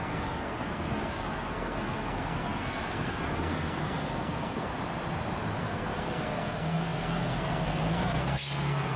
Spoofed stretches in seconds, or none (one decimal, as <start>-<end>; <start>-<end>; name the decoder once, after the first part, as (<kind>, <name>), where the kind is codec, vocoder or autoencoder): 0.0-4.7 (codec, SNAC); 5.6-9.0